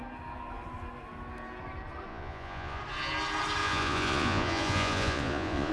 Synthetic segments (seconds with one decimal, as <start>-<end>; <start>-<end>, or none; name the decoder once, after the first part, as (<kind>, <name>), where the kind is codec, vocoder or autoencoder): 2.1-2.8 (vocoder, Vocos); 3.6-5.7